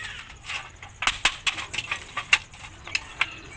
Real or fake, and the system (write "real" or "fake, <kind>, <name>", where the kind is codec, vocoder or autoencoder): real